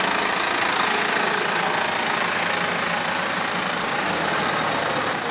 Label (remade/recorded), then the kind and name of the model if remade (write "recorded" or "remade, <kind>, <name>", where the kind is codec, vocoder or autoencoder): recorded